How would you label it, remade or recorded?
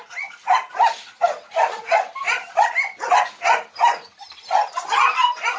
recorded